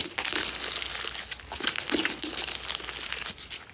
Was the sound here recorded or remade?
recorded